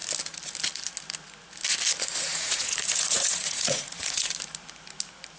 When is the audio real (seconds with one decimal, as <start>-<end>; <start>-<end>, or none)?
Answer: 0.0-2.3; 4.3-5.4